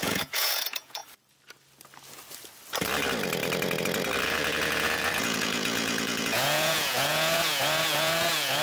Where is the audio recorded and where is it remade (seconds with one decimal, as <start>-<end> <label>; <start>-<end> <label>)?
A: 0.0-1.0 remade; 1.0-4.2 recorded; 4.2-8.6 remade